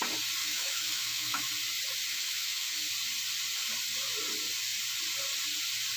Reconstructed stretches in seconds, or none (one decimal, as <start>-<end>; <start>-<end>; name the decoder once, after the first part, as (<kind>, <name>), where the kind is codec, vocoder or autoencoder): 0.4-1.5 (autoencoder, DAC-VAE); 2.1-2.9